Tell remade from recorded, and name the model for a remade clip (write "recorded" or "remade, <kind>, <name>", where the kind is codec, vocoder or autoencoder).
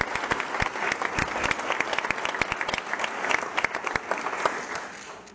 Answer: recorded